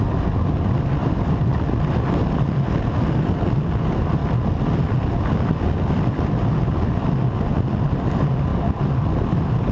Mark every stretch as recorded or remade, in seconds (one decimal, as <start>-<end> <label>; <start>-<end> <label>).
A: 0.0-9.7 recorded